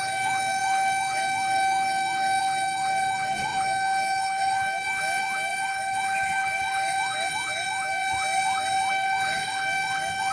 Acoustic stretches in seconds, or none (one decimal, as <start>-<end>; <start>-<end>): 8.0-8.9